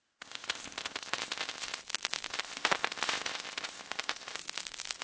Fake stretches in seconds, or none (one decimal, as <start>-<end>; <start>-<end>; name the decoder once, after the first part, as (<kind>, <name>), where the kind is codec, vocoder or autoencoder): 0.0-1.8 (codec, ZipCodec); 2.3-4.4